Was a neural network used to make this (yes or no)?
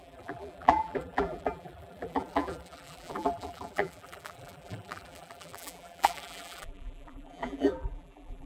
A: yes